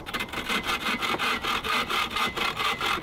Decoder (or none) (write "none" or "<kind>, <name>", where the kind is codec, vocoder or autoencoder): none